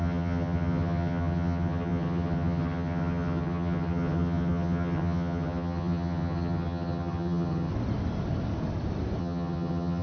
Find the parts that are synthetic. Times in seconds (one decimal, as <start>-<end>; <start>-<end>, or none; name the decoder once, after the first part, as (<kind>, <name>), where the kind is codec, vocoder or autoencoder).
0.0-7.7 (vocoder, HiFi-GAN); 9.2-10.0